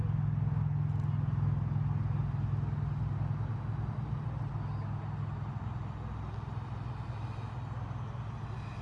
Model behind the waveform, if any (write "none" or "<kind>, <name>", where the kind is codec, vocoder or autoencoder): none